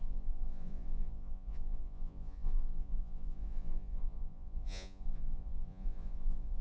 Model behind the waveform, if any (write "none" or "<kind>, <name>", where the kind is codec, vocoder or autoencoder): vocoder, Vocos